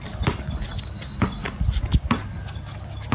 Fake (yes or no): no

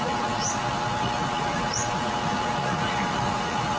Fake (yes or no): yes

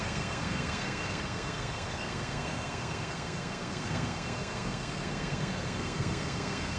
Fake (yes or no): yes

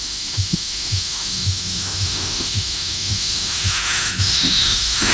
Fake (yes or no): yes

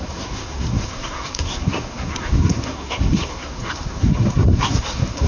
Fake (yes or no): yes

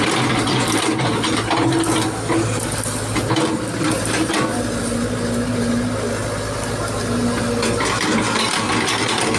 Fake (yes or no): no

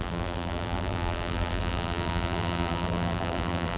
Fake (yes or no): yes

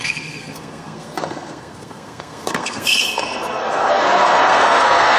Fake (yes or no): yes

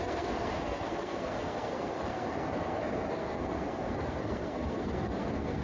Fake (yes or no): yes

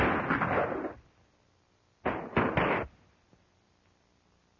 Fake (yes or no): no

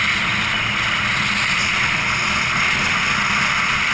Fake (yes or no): no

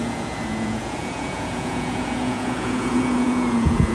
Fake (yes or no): yes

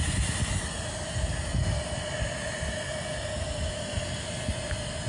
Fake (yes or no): no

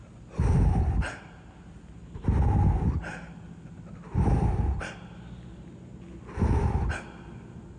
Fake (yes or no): no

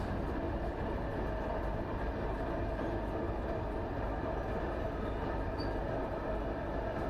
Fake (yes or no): yes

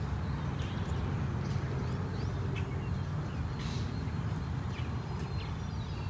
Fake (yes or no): no